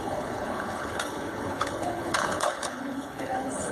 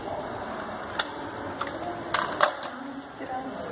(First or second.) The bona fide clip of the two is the second